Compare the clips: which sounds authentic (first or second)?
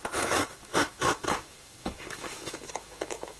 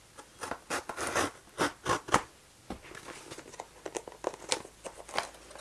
second